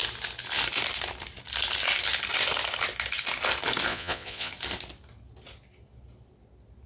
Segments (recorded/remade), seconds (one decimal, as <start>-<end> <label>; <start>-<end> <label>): 0.0-3.9 recorded; 3.9-4.5 remade; 4.5-6.9 recorded